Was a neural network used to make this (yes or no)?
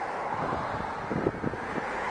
no